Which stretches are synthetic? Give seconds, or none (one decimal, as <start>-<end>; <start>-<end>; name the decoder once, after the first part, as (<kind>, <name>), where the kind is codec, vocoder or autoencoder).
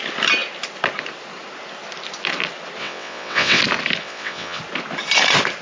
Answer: 2.8-3.6 (vocoder, WaveNeXt); 4.0-4.6